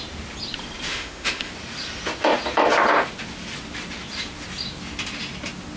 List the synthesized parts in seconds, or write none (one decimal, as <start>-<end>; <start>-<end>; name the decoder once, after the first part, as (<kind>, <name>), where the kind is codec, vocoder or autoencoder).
0.9-1.5 (autoencoder, DAC-VAE)